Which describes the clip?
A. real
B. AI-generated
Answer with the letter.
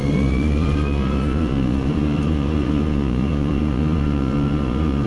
B